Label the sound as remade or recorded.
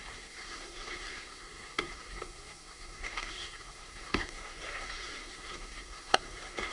remade